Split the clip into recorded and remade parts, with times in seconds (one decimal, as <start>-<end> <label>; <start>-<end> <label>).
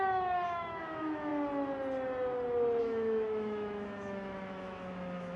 0.0-1.3 remade; 1.3-2.8 recorded; 2.8-5.4 remade